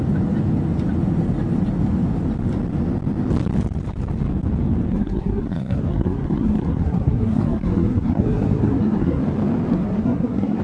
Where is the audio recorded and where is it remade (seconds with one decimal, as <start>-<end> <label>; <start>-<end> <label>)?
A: 0.0-4.9 recorded; 4.9-9.2 remade; 9.2-9.7 recorded; 9.7-10.6 remade